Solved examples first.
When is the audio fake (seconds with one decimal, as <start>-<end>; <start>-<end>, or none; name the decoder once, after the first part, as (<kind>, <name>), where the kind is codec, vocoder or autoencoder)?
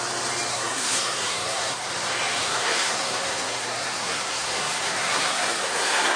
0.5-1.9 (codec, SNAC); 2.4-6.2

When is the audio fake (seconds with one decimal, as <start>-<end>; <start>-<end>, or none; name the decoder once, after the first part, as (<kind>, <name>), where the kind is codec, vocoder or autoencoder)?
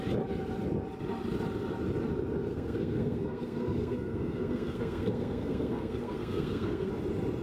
2.5-6.9 (codec, SNAC)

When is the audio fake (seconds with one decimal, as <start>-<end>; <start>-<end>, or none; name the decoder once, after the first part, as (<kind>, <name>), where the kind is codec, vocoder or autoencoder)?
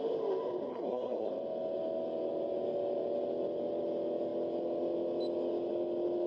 0.7-1.3 (codec, SNAC)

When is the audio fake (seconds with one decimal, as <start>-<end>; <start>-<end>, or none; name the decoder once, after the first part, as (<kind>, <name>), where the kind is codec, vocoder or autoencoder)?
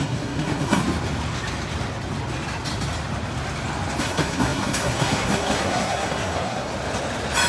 0.0-0.8 (codec, SNAC); 4.0-6.7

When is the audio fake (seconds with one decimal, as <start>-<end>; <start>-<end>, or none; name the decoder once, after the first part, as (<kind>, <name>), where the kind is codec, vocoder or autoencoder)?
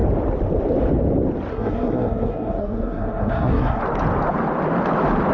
1.5-3.8 (codec, SNAC)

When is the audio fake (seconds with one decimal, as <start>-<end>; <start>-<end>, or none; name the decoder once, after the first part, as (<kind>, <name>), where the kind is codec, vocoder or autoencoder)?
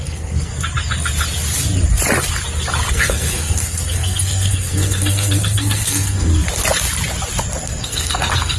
0.0-0.5 (codec, SNAC); 2.9-6.3; 7.6-8.6